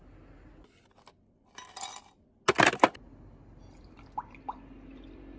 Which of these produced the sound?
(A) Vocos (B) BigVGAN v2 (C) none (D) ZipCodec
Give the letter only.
C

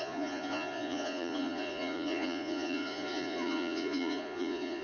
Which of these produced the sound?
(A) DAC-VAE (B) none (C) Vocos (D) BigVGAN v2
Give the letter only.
C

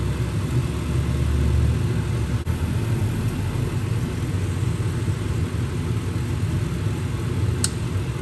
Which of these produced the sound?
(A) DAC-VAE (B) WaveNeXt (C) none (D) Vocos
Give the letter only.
C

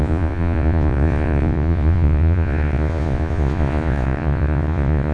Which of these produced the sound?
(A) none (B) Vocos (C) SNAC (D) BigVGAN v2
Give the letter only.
B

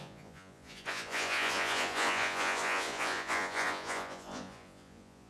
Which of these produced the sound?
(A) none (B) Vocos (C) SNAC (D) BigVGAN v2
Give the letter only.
B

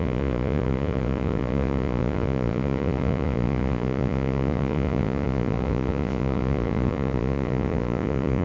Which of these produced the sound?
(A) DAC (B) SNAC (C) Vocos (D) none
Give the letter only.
C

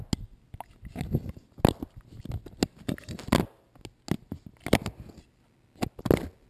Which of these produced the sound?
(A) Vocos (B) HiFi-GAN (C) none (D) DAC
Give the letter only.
C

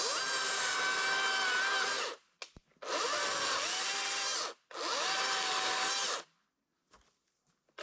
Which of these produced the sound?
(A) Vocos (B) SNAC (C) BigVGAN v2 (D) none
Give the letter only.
D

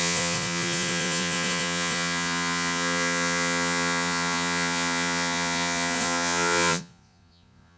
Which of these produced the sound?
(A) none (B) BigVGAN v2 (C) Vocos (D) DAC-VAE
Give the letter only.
C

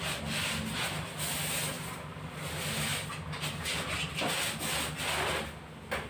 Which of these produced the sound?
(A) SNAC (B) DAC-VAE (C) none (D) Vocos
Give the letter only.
C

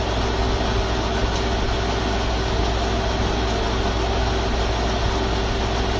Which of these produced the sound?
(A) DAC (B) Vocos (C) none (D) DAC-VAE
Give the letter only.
C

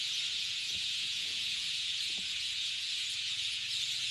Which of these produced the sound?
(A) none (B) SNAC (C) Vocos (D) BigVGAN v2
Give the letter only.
C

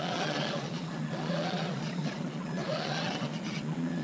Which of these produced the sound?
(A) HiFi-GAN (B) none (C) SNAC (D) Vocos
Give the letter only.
D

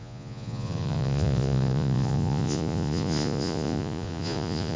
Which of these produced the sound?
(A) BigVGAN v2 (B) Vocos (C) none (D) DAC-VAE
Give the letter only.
B